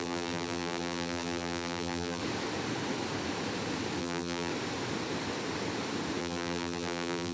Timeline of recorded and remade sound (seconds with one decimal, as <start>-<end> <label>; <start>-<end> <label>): 0.0-2.2 remade; 2.2-4.0 recorded; 4.0-4.5 remade; 4.5-6.2 recorded; 6.2-7.3 remade